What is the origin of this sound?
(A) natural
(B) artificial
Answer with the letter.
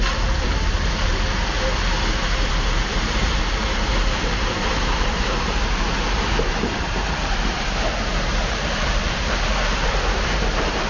B